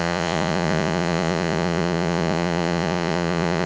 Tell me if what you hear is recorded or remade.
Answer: remade